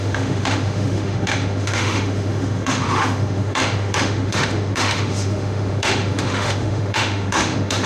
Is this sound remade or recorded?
remade